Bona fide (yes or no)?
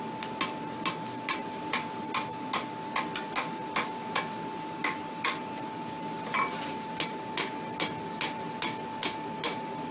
yes